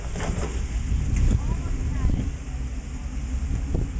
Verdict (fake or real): real